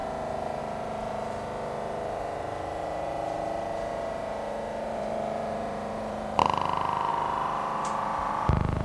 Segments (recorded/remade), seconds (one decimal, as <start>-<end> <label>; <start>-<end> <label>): 0.0-6.4 remade; 6.4-7.1 recorded; 7.1-8.8 remade

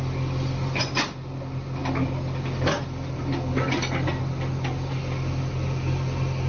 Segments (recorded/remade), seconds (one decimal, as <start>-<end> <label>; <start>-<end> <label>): 0.0-6.5 recorded

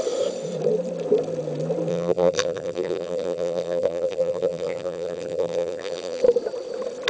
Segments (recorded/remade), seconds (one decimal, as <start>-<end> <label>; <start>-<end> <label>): 0.0-1.9 recorded; 1.9-6.2 remade; 6.2-7.1 recorded

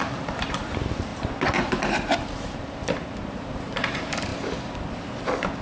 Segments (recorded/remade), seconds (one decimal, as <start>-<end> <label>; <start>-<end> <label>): 0.0-4.3 remade; 4.3-5.6 recorded

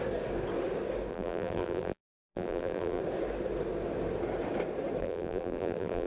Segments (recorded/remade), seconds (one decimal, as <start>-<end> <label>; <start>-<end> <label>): 0.0-1.1 recorded; 1.1-3.0 remade; 3.0-5.0 recorded; 5.0-6.1 remade

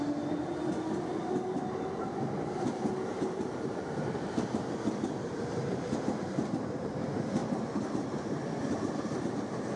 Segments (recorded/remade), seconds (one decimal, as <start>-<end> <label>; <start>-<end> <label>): 0.0-3.1 recorded; 3.1-6.7 remade; 6.7-9.8 recorded

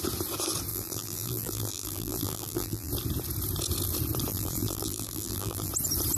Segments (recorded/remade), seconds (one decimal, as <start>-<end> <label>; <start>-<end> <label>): 0.0-0.7 recorded; 0.7-2.9 remade; 2.9-4.3 recorded; 4.3-5.7 remade; 5.7-6.2 recorded

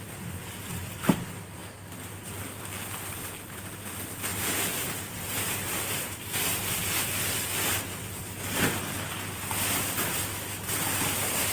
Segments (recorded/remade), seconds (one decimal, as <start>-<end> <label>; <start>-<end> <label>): 0.0-4.3 recorded; 4.3-9.1 remade; 9.1-11.5 recorded